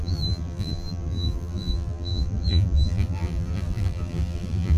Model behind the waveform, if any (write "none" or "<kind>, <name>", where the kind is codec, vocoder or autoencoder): vocoder, BigVGAN v2